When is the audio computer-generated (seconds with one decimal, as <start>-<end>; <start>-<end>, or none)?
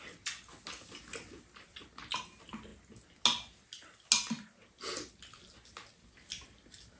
none